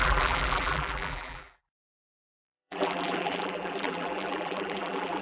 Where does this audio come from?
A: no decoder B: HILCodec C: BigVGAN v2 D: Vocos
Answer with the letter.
C